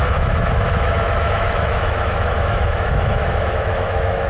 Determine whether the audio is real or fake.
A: fake